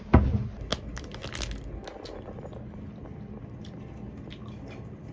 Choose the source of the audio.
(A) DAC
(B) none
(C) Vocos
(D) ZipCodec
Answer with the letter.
B